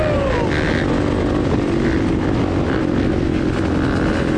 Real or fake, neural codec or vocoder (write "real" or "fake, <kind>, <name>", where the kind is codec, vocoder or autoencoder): real